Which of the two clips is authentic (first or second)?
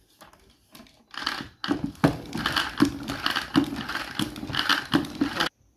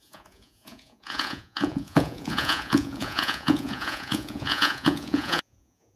first